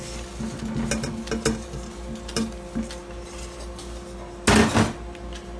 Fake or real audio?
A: real